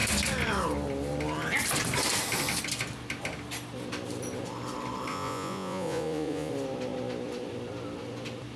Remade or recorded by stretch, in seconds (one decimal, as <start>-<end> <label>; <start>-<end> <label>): 0.0-5.1 recorded; 5.1-6.5 remade; 6.5-8.6 recorded